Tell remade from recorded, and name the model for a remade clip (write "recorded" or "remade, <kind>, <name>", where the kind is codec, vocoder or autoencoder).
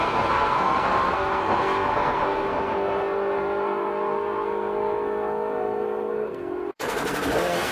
remade, codec, SNAC